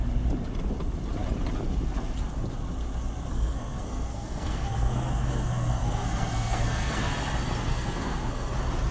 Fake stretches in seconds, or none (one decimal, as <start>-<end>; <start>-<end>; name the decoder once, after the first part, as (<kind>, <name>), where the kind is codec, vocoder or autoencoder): 3.3-7.1 (codec, SNAC); 7.7-8.5